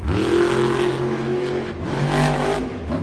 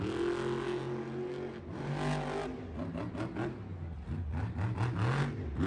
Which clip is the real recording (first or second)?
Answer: second